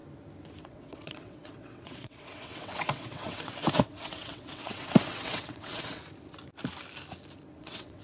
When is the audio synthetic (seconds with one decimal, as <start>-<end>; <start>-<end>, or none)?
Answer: 0.6-6.0; 7.6-8.0